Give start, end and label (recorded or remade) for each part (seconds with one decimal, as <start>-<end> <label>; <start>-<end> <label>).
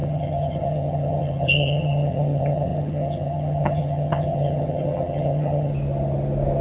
0.0-5.7 remade; 5.7-6.6 recorded